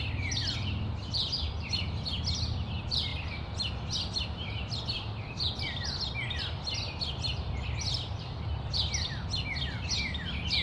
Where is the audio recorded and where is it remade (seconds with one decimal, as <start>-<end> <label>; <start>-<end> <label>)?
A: 0.0-10.6 recorded